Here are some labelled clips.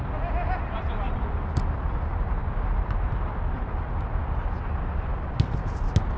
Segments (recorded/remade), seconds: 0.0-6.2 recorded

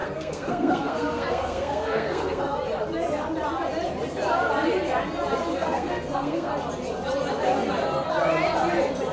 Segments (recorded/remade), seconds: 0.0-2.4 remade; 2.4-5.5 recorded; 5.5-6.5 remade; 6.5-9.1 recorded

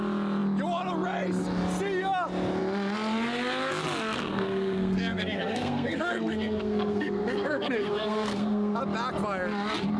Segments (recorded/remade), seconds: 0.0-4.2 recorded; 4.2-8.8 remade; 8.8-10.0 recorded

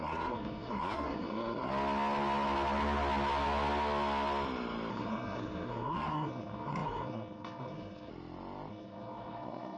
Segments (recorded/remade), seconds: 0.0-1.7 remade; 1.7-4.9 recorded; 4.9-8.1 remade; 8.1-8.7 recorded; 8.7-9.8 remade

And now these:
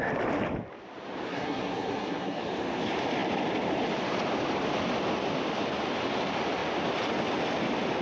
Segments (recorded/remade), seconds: 0.0-1.3 recorded; 1.3-2.4 remade; 2.4-8.0 recorded